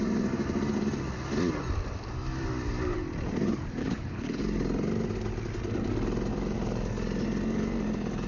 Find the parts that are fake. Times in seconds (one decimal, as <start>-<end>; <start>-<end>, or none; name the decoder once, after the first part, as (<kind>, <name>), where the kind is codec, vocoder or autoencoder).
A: 3.8-4.4 (codec, HILCodec)